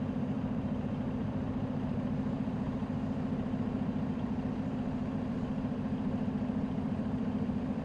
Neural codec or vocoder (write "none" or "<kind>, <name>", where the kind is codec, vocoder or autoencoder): vocoder, BigVGAN v2